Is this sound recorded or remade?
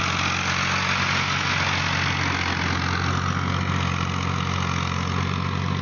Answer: recorded